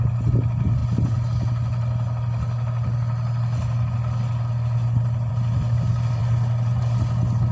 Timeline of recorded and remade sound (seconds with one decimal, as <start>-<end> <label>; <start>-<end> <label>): 0.0-7.5 recorded